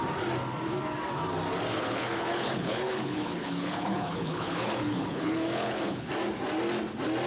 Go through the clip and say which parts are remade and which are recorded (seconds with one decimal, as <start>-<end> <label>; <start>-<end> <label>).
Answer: 0.0-1.7 recorded; 1.7-6.1 remade; 6.1-7.3 recorded